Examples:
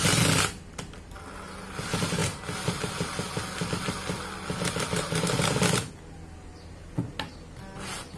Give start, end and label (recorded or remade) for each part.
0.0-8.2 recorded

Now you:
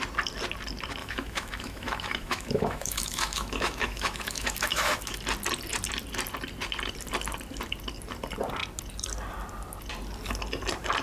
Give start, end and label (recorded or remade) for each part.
0.0-1.0 recorded; 1.0-5.2 remade; 5.2-11.0 recorded

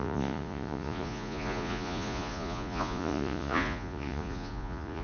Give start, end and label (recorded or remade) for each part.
0.0-5.0 remade

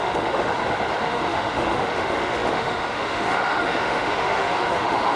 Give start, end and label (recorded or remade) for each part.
0.0-0.5 remade; 0.5-1.0 recorded; 1.0-5.2 remade

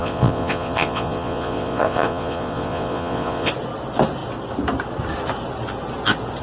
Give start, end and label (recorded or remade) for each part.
0.0-3.5 remade; 3.5-6.4 recorded

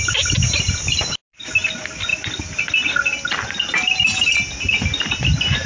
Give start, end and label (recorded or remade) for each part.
0.0-5.7 recorded

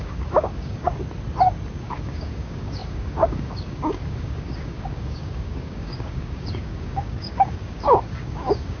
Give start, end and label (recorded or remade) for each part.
0.0-0.9 remade; 0.9-1.8 recorded; 1.8-8.8 remade